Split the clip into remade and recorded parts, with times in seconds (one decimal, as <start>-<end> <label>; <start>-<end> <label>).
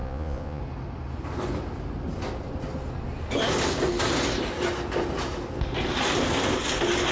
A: 0.0-0.6 remade; 0.6-7.1 recorded